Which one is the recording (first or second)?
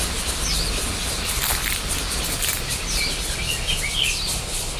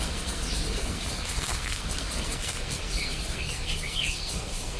first